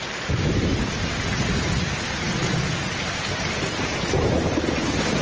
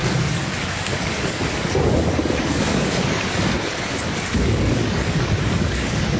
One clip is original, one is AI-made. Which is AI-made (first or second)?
second